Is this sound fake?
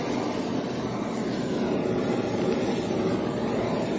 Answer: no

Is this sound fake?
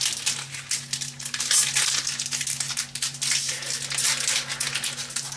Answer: no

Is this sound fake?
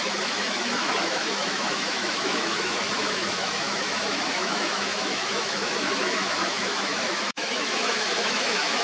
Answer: yes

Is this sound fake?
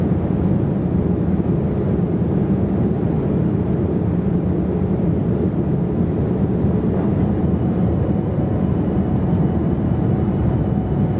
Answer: no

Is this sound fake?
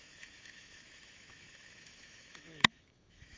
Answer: yes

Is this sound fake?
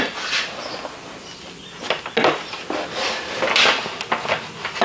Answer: no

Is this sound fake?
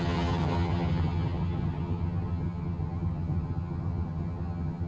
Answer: yes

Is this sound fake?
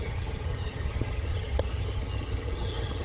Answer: yes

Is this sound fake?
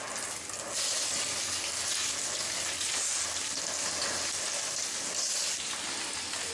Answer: no